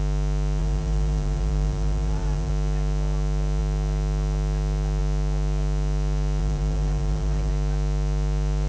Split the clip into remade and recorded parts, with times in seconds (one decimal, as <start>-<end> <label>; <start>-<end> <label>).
0.0-0.6 recorded; 0.6-2.5 remade; 2.5-6.4 recorded; 6.4-7.5 remade; 7.5-8.7 recorded